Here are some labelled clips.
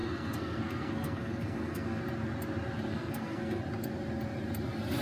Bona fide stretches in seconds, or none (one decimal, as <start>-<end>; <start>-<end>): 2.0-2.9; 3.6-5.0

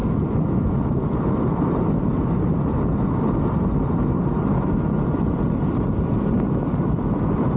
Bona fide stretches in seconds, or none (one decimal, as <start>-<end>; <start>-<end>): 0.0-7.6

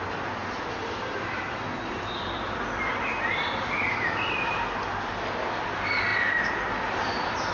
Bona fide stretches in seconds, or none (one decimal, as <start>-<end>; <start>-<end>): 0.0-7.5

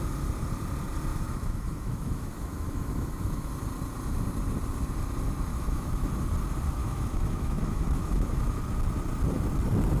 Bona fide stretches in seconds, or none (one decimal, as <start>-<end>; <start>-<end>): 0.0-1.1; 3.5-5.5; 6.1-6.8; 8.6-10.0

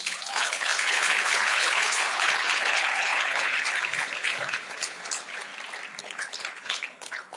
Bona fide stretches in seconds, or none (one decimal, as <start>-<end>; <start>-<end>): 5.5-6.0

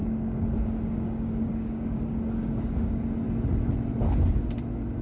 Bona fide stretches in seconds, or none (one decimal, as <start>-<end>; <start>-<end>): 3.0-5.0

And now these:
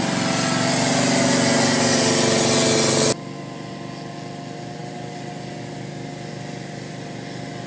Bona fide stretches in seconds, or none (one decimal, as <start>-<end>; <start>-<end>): 0.0-7.7